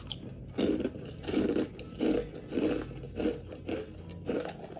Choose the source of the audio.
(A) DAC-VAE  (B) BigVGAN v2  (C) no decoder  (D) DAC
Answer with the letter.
C